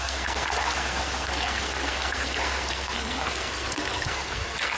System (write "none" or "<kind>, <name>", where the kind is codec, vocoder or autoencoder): codec, SNAC